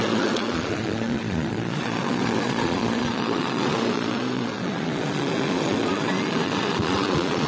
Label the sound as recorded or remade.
remade